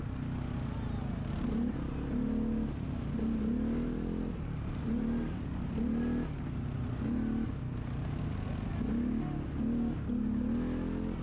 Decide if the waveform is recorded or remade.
recorded